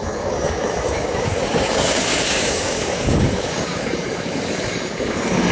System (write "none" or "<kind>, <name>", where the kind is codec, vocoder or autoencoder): codec, DAC